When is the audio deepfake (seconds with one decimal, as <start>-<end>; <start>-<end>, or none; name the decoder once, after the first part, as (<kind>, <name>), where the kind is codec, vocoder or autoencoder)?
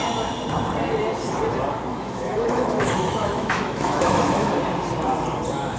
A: 1.9-4.5 (autoencoder, DAC-VAE)